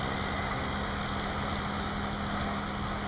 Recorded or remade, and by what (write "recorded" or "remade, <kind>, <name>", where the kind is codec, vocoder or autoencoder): recorded